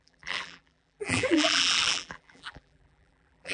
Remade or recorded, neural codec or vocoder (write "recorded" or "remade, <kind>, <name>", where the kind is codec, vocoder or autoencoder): remade, vocoder, BigVGAN v2